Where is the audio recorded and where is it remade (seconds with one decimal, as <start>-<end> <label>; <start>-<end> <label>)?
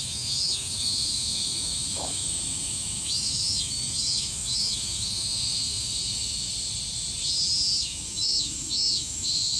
0.0-6.5 remade; 6.5-7.8 recorded; 7.8-9.6 remade